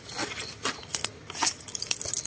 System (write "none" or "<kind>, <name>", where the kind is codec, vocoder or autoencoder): none